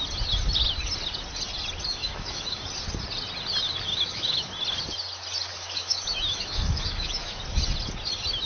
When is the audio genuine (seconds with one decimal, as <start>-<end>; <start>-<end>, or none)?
0.0-1.9; 2.6-3.9; 4.5-5.5; 7.4-8.5